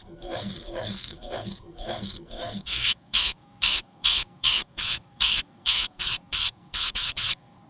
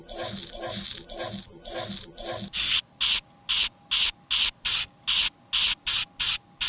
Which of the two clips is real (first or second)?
second